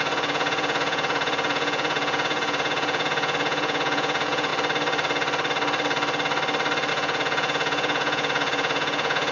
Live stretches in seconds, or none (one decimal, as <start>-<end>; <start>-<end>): 4.5-6.9